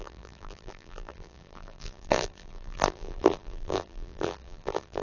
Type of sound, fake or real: fake